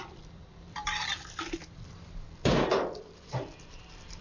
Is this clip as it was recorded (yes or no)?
no